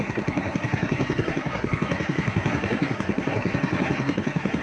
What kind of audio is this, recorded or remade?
remade